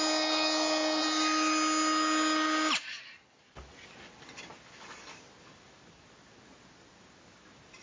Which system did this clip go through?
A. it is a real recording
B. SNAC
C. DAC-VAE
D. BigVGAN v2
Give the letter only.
A